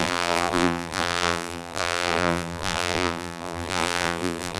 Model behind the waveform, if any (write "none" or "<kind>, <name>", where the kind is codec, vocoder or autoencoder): vocoder, BigVGAN v2